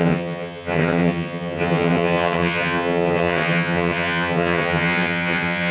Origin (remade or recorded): remade